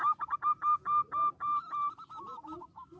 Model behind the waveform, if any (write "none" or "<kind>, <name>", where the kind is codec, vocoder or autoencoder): none